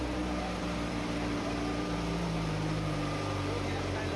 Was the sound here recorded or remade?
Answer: remade